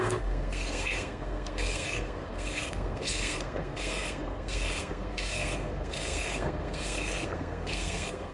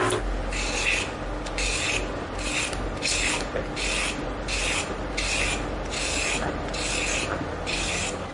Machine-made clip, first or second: first